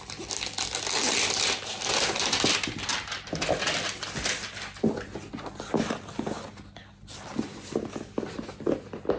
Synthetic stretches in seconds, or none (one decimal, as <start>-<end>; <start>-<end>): none